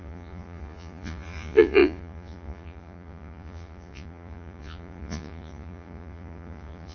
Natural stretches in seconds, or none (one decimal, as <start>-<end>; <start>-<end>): none